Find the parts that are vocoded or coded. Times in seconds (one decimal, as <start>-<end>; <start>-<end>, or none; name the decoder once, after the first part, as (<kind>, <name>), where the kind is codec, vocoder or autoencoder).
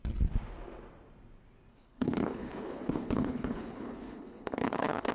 1.7-5.1 (codec, HILCodec)